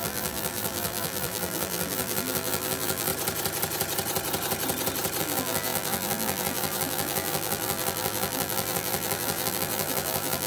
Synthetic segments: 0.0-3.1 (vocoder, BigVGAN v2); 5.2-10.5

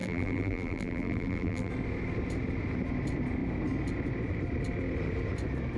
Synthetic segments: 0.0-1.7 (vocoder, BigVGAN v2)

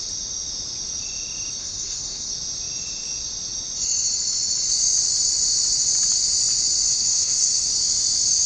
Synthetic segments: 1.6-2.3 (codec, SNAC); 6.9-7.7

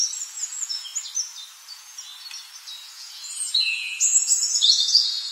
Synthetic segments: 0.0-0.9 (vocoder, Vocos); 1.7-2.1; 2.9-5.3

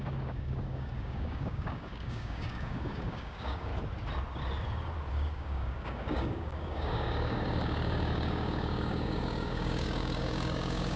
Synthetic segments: 0.0-3.7 (codec, DAC); 5.1-11.0